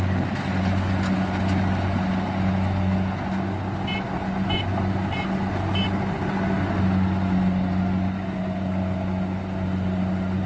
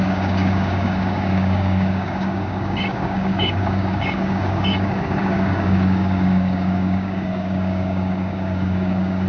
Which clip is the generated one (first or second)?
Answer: second